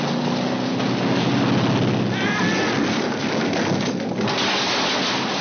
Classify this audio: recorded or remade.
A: recorded